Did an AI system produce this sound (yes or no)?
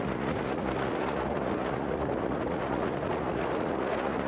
yes